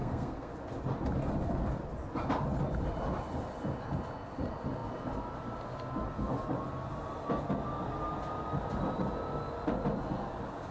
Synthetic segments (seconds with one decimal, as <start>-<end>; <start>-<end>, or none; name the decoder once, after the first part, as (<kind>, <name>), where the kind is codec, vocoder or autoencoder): 0.0-0.5 (codec, SNAC)